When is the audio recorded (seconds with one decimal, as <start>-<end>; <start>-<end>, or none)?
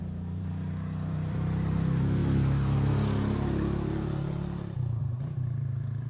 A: 2.2-5.0